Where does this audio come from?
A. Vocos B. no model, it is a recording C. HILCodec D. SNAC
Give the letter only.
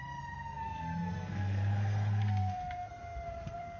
D